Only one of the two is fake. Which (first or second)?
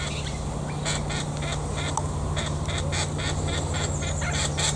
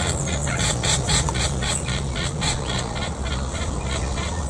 second